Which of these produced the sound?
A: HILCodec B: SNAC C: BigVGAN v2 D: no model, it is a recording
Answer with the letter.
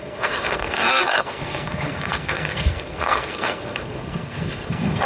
B